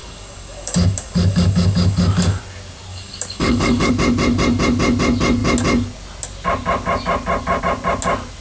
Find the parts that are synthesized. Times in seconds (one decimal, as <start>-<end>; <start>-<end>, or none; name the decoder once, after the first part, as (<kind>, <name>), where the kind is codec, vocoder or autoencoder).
0.0-2.4 (codec, DAC); 2.9-3.9